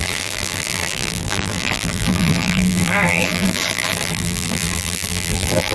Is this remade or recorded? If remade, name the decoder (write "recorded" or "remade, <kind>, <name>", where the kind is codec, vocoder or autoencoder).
remade, vocoder, BigVGAN v2